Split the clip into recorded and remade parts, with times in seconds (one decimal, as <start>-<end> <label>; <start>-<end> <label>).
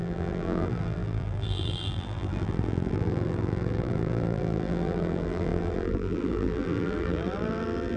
0.0-8.0 remade